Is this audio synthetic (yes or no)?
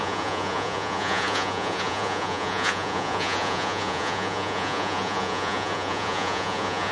yes